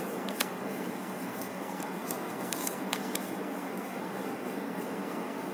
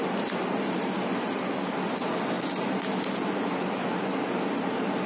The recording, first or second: second